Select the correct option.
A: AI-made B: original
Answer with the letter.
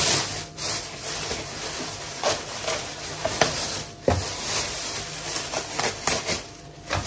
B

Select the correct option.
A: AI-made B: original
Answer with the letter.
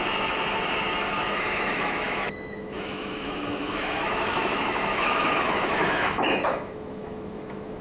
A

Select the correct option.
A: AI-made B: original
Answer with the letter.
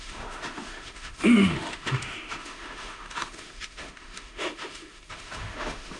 A